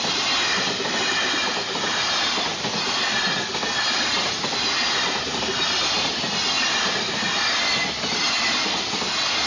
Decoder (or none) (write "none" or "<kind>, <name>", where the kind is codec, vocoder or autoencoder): none